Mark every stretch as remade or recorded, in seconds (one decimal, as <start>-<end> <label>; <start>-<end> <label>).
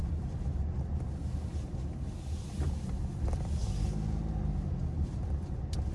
0.0-5.9 recorded